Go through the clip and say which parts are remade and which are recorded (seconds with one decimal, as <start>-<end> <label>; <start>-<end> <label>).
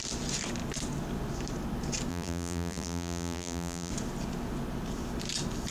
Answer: 0.0-2.1 recorded; 2.1-3.9 remade; 3.9-5.7 recorded